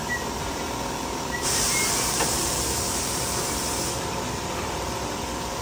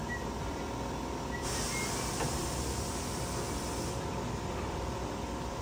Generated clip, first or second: first